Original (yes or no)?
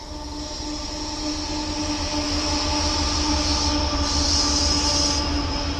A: yes